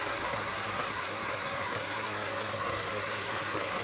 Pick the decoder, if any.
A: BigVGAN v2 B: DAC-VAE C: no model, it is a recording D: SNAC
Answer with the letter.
D